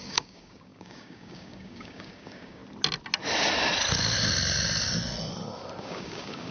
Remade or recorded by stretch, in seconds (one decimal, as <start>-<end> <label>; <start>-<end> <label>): 0.0-2.6 remade; 2.6-5.8 recorded; 5.8-6.5 remade